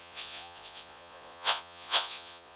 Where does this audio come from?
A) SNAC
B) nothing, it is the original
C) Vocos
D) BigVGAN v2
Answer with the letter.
C